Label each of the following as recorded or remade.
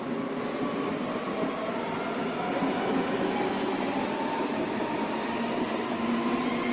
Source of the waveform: recorded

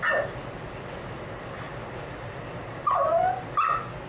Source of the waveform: recorded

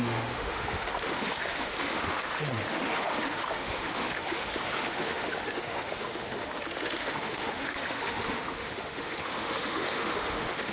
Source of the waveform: remade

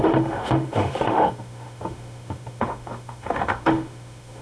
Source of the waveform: remade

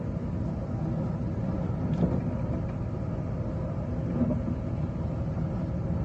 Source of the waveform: recorded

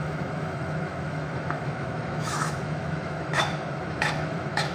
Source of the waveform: remade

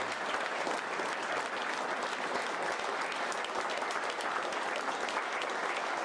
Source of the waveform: recorded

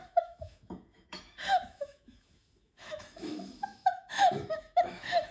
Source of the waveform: remade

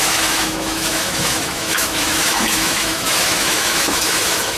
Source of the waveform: remade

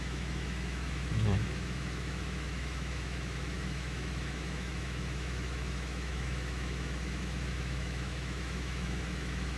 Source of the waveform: remade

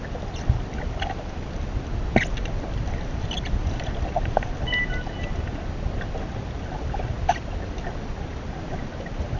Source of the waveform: recorded